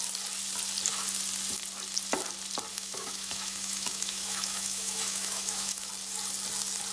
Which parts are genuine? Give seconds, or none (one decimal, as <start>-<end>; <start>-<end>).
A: 0.0-2.7; 5.9-6.9